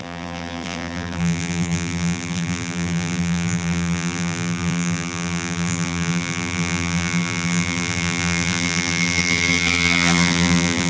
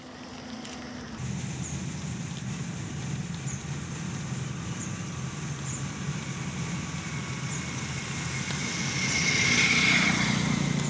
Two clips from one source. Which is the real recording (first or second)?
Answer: second